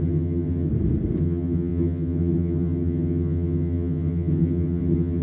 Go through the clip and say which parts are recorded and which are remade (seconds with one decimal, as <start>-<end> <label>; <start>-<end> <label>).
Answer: 0.0-0.7 remade; 0.7-1.2 recorded; 1.2-5.2 remade